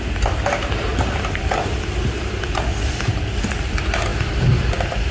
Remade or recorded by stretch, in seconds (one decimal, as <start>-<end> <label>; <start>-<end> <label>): 0.0-0.9 recorded; 0.9-3.2 remade; 3.2-4.1 recorded; 4.1-5.1 remade